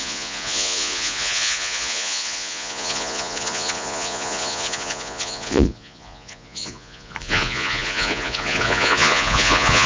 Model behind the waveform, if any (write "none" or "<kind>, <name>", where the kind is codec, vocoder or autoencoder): vocoder, Vocos